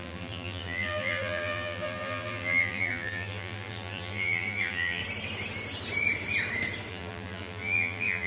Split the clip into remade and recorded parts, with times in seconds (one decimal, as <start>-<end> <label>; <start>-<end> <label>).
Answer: 0.0-5.0 remade; 5.0-6.9 recorded; 6.9-8.3 remade